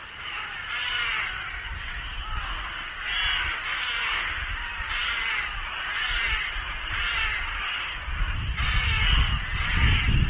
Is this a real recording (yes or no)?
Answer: no